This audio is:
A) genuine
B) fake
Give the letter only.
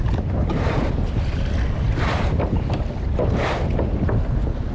A